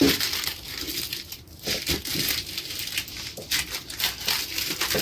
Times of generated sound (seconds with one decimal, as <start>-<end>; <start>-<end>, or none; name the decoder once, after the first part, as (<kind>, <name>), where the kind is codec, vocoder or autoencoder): 0.0-2.1 (vocoder, BigVGAN v2); 4.3-5.0